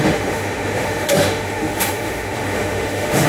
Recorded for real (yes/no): no